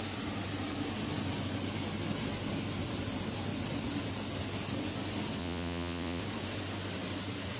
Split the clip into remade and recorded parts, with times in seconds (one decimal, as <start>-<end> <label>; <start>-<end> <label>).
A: 0.0-5.4 recorded; 5.4-6.2 remade; 6.2-7.6 recorded